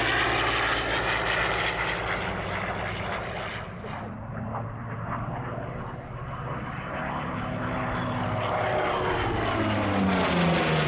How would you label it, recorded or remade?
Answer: recorded